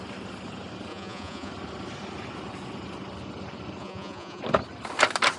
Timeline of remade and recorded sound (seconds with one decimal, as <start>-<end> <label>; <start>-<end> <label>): 0.0-0.9 recorded; 0.9-1.5 remade; 1.5-3.8 recorded; 3.8-4.4 remade; 4.4-5.4 recorded